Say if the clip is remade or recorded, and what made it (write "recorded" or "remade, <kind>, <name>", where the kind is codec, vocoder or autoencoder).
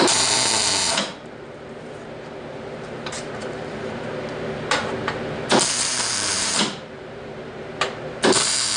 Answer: remade, vocoder, BigVGAN v2